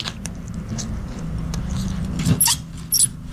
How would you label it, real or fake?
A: real